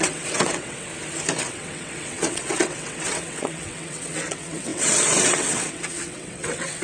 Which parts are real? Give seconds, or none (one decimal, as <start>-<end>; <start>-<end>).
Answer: 0.9-1.5